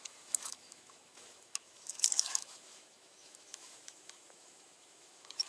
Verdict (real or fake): fake